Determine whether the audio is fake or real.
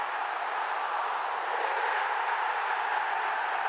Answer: real